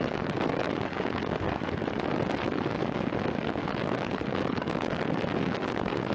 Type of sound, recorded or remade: remade